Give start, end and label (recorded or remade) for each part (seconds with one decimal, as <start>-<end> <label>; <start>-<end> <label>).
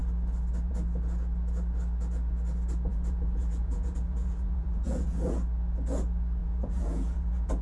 0.0-2.9 recorded; 2.9-5.3 remade; 5.3-6.4 recorded; 6.4-7.6 remade